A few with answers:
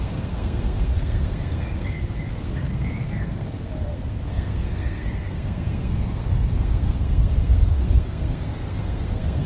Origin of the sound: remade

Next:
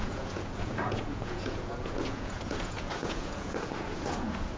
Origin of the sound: remade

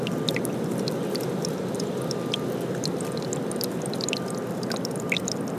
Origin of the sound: recorded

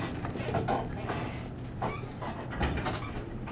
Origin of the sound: recorded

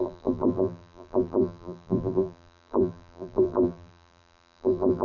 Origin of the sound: remade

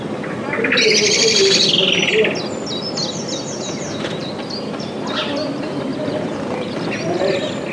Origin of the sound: recorded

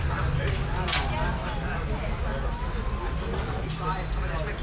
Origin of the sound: recorded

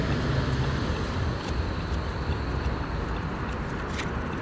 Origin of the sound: remade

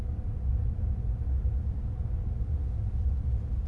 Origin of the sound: recorded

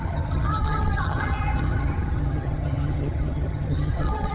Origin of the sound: remade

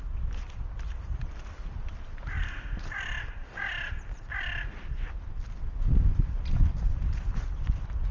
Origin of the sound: remade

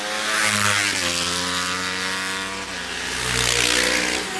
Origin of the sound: recorded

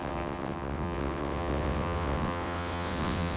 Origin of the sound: remade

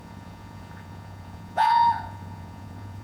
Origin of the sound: remade